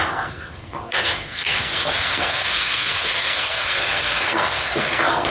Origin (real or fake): fake